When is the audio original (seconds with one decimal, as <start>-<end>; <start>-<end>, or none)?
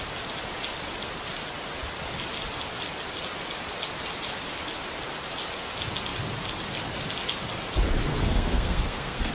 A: 0.0-8.1